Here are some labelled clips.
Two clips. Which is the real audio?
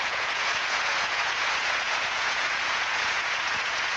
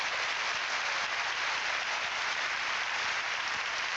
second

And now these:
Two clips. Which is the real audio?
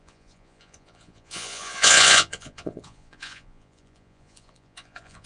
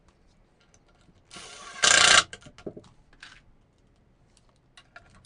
second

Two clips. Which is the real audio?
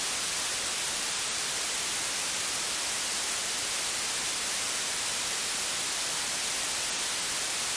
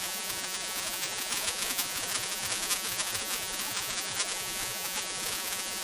first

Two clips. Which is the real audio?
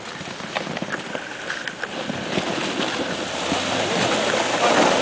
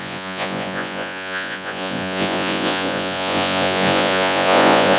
first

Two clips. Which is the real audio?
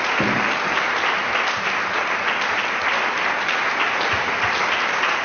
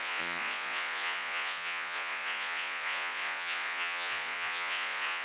first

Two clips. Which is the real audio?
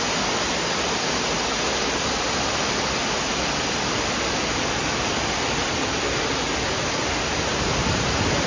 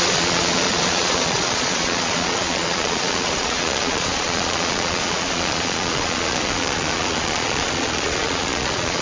first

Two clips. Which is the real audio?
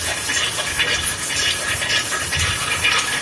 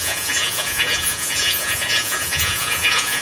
first